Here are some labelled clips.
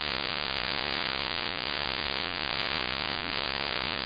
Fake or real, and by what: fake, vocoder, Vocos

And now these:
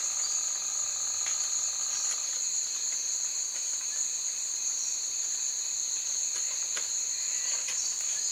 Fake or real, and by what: real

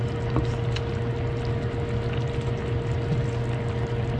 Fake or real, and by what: real